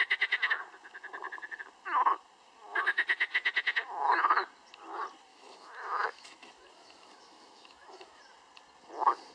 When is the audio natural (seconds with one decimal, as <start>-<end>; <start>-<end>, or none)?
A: 0.0-5.3; 8.2-9.3